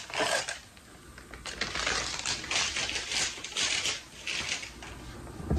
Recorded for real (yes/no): yes